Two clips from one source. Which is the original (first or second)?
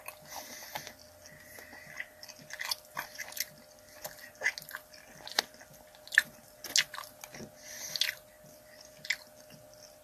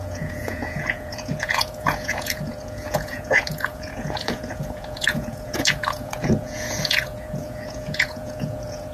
first